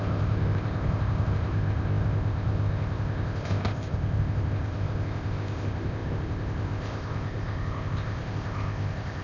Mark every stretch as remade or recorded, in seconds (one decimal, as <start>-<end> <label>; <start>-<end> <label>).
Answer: 0.0-9.2 remade